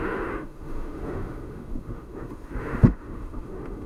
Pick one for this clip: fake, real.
fake